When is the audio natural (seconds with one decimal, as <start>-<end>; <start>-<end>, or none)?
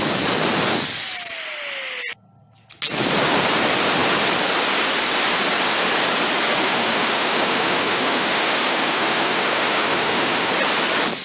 0.0-6.6; 10.5-11.2